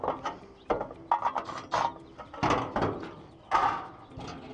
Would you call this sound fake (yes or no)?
no